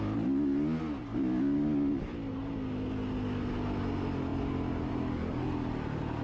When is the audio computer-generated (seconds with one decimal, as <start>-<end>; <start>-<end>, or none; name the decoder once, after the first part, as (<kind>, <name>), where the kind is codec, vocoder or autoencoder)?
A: none